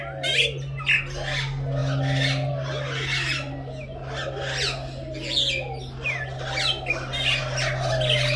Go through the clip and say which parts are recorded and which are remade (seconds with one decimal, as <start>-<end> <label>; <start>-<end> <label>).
0.0-8.4 recorded